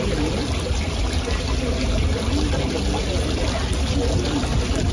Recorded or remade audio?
recorded